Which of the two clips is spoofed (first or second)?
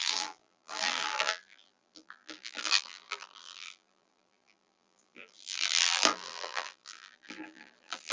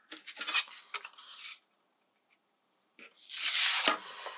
first